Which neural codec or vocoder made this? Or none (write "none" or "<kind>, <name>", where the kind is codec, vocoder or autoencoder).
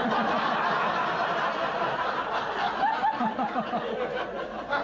none